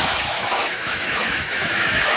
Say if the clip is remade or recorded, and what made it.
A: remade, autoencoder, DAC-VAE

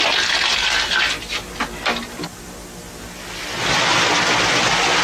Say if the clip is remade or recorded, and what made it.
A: recorded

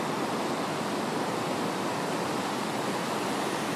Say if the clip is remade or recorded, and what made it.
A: recorded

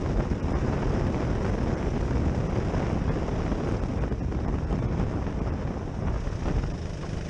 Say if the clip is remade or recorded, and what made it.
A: recorded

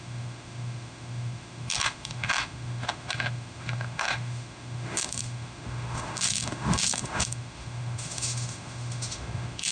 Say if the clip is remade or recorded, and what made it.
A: remade, autoencoder, DAC-VAE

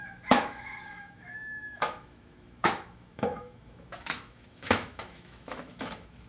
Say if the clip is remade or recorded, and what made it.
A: remade, autoencoder, DAC-VAE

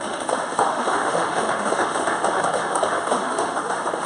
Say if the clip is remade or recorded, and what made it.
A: remade, autoencoder, DAC-VAE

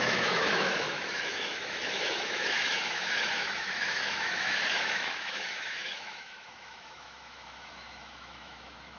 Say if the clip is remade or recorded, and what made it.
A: remade, autoencoder, DAC-VAE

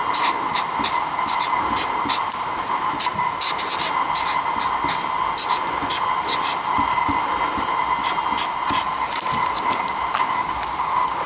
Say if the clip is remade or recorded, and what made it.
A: recorded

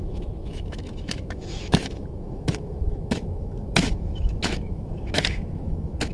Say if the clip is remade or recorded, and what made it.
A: remade, autoencoder, DAC-VAE